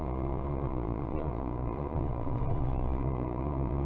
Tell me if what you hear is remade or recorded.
remade